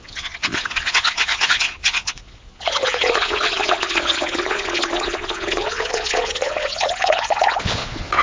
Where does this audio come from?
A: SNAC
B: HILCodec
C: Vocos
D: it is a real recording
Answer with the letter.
C